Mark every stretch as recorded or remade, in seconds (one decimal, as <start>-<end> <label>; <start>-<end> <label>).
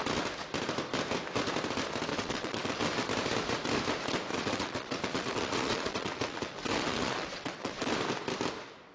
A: 0.0-2.1 recorded; 2.1-2.8 remade; 2.8-4.3 recorded; 4.3-7.9 remade; 7.9-8.9 recorded